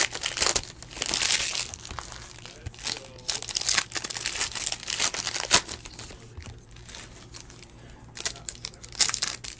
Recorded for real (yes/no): yes